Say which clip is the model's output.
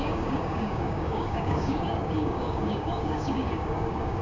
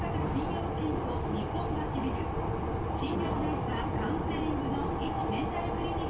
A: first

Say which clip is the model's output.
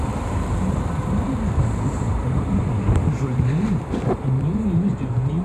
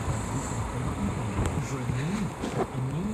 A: first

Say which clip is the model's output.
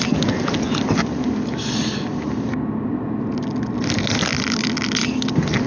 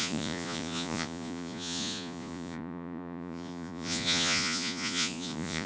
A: second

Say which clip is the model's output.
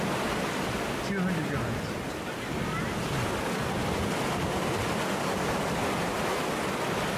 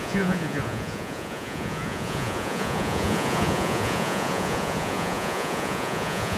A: second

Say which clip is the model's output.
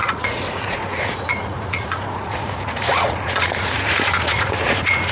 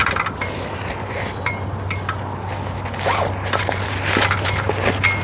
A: first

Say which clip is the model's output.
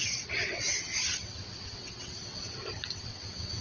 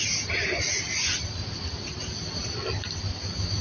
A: first